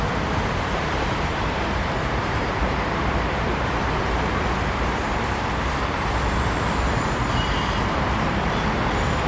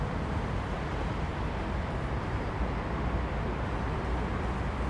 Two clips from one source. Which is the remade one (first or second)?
first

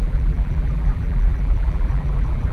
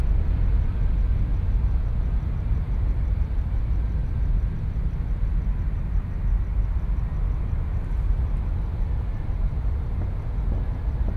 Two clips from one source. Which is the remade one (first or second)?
first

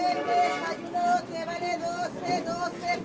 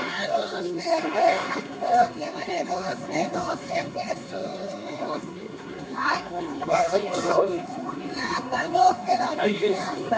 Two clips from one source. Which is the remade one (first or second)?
second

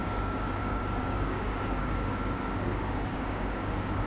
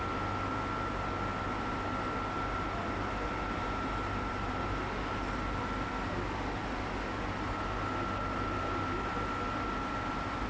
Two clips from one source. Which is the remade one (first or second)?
first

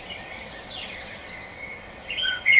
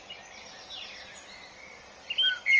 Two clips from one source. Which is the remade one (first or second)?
first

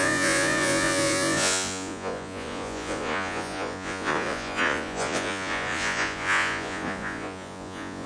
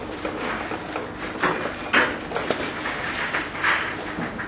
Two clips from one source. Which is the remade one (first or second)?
first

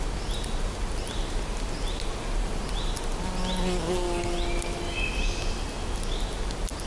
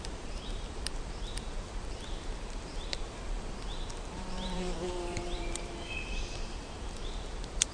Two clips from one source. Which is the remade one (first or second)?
second